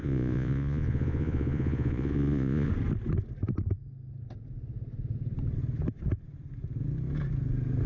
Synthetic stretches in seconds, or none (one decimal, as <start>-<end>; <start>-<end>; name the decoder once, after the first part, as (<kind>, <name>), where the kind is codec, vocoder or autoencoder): 0.0-2.7 (vocoder, Vocos)